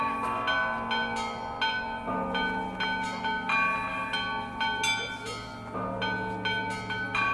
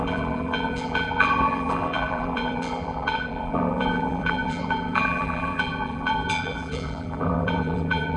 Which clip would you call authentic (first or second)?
first